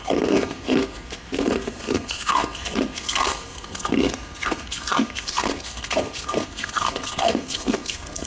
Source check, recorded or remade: remade